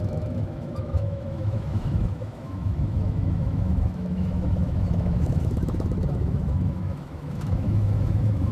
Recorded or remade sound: remade